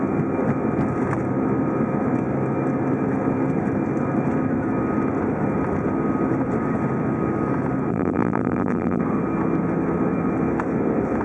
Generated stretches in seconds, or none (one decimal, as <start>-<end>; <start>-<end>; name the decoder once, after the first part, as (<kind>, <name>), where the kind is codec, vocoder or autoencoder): 7.9-9.0 (vocoder, BigVGAN v2)